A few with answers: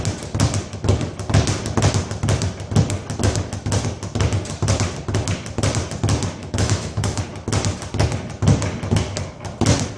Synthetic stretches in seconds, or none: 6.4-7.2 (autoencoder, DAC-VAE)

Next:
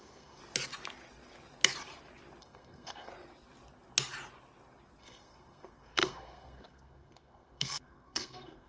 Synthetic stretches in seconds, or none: 0.0-0.4 (codec, SNAC); 2.4-3.1; 5.0-8.7